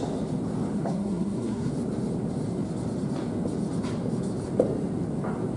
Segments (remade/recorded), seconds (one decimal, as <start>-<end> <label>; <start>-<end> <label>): 0.0-0.7 recorded; 0.7-1.7 remade; 1.7-5.6 recorded